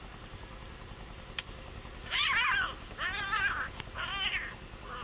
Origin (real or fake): real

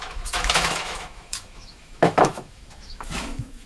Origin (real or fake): fake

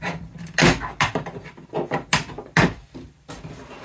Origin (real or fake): real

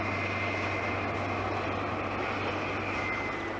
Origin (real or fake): real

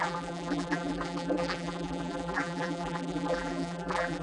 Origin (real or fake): fake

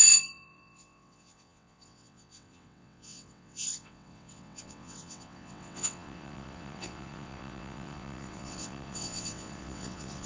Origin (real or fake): fake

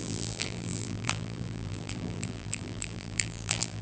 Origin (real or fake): fake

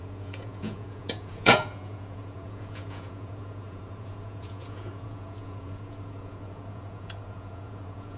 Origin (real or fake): fake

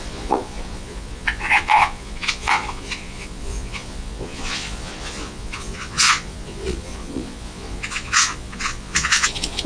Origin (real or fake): fake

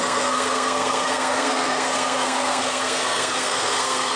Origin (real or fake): fake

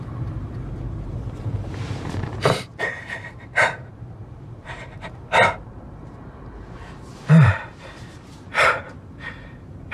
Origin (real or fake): fake